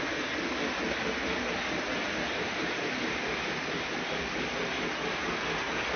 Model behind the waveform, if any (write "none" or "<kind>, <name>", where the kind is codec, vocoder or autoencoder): none